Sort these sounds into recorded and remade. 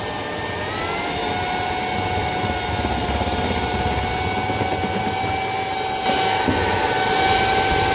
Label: recorded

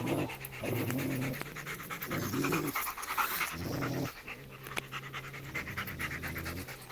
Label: recorded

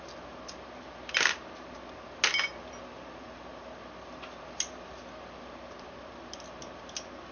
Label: recorded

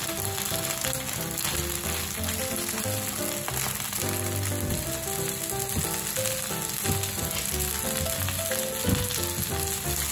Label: recorded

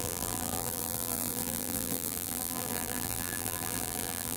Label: remade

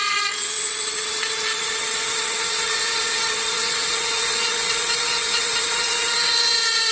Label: remade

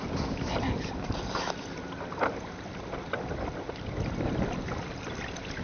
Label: recorded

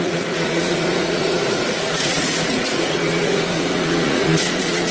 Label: remade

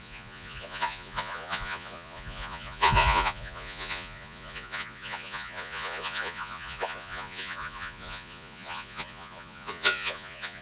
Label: remade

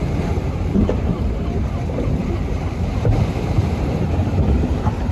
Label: remade